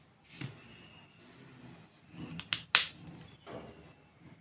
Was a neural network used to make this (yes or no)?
no